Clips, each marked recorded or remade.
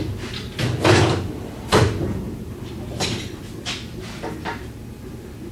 recorded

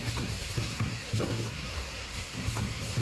remade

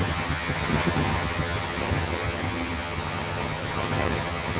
remade